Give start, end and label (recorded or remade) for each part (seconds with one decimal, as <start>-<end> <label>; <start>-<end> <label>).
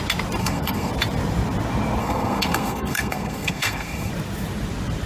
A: 0.0-0.4 recorded; 0.4-0.9 remade; 0.9-2.0 recorded; 2.0-4.1 remade; 4.1-5.1 recorded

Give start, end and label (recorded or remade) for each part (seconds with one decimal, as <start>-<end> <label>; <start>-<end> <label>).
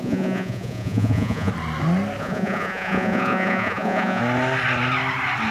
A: 0.0-1.5 remade; 1.5-2.2 recorded; 2.2-4.2 remade; 4.2-5.5 recorded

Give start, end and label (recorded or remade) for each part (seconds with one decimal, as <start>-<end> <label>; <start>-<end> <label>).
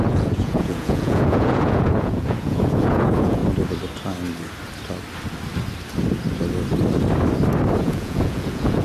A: 0.0-3.4 remade; 3.4-7.8 recorded; 7.8-8.8 remade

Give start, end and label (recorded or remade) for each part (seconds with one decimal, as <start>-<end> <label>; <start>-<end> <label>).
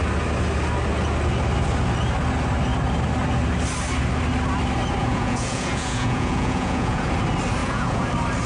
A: 0.0-5.0 recorded; 5.0-7.1 remade; 7.1-7.6 recorded; 7.6-8.1 remade; 8.1-8.5 recorded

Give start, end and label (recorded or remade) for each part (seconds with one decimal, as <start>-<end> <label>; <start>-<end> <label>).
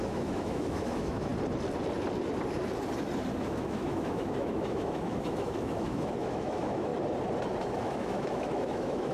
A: 0.0-1.3 remade; 1.3-3.4 recorded; 3.4-6.9 remade; 6.9-7.6 recorded; 7.6-9.1 remade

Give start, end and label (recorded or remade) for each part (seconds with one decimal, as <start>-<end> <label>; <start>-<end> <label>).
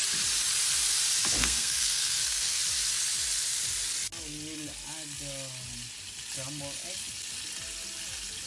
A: 0.0-1.4 recorded; 1.4-2.6 remade; 2.6-8.5 recorded